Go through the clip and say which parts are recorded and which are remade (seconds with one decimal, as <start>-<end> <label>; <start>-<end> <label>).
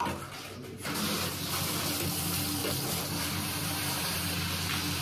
0.0-1.3 recorded; 1.3-1.8 remade; 1.8-2.6 recorded; 2.6-4.2 remade; 4.2-5.0 recorded